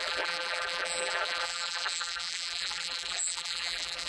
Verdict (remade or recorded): remade